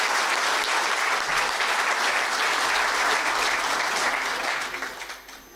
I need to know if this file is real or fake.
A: real